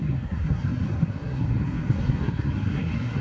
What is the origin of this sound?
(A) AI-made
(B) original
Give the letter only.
A